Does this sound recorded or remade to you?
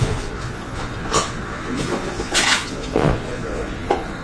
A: remade